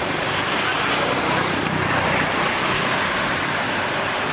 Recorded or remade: recorded